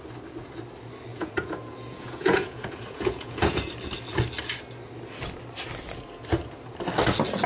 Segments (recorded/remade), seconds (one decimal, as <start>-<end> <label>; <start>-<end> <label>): 0.0-1.1 recorded; 1.1-3.7 remade; 3.7-7.5 recorded